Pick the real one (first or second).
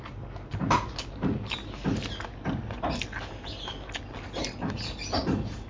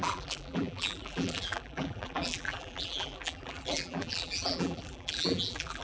first